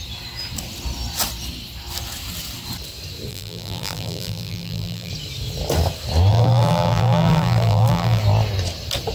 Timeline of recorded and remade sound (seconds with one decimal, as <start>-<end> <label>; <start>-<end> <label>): 0.0-3.3 recorded; 3.3-5.1 remade; 5.1-6.3 recorded; 6.3-8.2 remade; 8.2-9.1 recorded